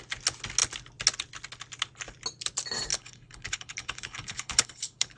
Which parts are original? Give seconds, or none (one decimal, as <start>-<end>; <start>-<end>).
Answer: 0.0-2.9